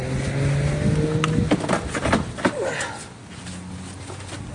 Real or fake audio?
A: real